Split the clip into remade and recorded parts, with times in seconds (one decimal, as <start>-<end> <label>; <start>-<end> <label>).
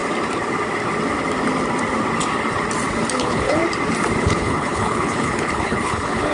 0.0-3.1 recorded; 3.1-3.6 remade; 3.6-4.2 recorded; 4.2-6.3 remade